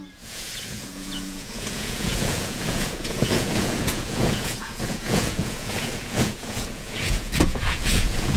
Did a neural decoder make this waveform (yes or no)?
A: yes